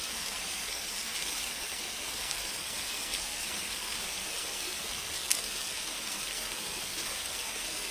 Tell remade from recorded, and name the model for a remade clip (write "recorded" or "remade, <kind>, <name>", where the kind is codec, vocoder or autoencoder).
remade, codec, SNAC